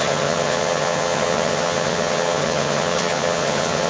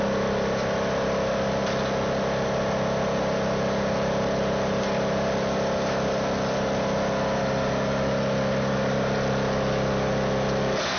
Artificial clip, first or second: first